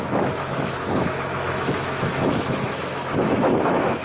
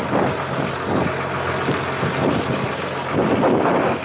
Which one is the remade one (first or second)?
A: first